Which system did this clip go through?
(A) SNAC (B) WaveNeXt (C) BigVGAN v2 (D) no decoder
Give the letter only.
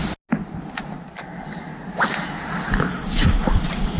D